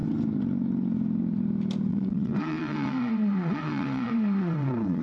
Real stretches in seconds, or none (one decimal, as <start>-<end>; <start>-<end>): 0.0-1.9